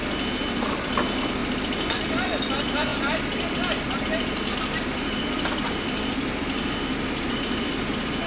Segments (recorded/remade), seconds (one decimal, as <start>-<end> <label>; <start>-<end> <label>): 0.0-1.4 remade; 1.4-1.9 recorded; 1.9-8.3 remade